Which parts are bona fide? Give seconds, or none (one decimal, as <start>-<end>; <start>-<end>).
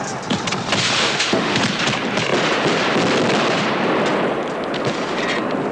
0.0-1.0; 1.6-5.7